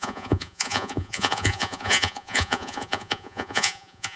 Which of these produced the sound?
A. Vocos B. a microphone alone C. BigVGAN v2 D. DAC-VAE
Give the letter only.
A